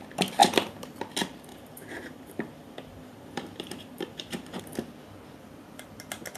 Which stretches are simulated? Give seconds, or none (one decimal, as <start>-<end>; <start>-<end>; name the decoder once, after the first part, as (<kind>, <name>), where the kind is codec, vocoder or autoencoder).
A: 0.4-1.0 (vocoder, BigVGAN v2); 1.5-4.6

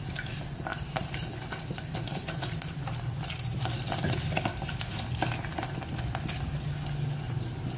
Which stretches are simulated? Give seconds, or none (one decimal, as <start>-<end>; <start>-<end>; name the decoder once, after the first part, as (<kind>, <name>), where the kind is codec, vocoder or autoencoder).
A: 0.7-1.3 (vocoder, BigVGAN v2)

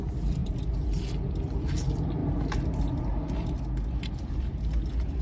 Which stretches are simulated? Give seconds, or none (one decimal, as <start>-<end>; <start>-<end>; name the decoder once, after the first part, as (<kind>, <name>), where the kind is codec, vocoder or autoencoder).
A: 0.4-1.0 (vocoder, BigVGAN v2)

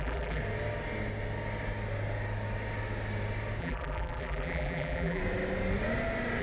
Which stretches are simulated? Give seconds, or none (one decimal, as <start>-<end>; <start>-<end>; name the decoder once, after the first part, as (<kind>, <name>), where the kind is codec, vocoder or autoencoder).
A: 0.0-0.4 (vocoder, BigVGAN v2); 3.6-5.2

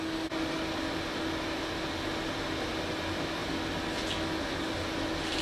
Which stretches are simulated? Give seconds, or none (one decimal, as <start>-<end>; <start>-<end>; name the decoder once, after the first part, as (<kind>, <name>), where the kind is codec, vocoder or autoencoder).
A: none